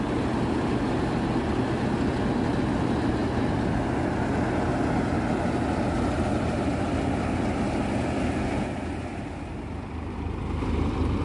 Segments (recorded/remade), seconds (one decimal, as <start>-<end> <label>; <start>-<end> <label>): 0.0-11.2 recorded